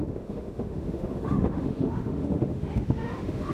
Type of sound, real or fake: fake